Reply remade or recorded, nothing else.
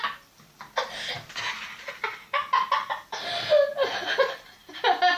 recorded